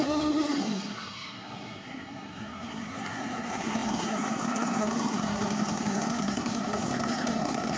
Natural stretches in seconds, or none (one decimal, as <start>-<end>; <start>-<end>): none